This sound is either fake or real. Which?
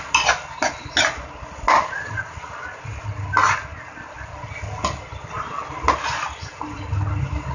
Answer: real